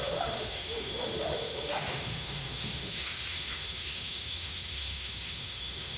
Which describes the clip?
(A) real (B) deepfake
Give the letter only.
B